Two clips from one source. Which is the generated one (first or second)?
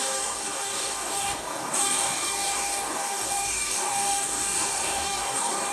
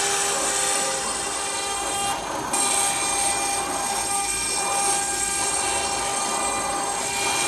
first